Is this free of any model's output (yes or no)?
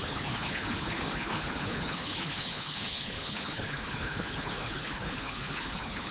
no